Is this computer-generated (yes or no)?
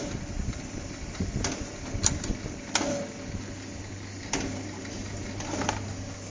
no